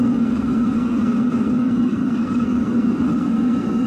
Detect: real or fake fake